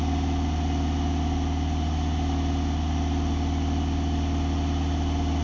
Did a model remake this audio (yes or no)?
no